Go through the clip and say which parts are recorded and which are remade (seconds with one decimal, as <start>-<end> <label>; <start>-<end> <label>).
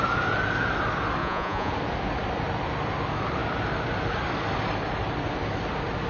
0.0-1.2 recorded; 1.2-1.7 remade; 1.7-6.1 recorded